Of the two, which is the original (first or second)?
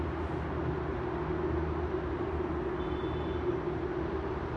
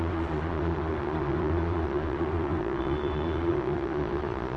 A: first